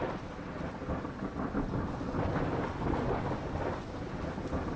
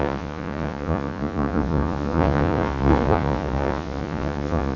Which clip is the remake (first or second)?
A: second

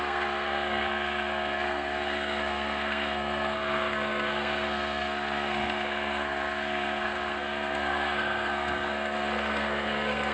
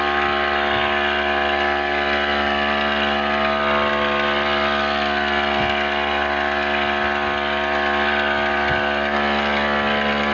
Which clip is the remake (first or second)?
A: first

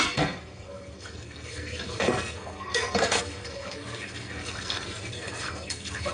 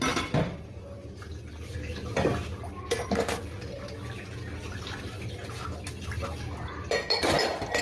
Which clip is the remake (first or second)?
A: first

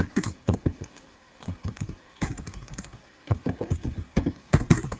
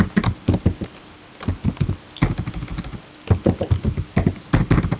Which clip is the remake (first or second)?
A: first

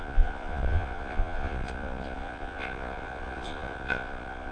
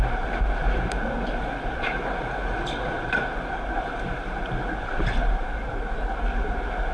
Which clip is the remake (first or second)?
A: first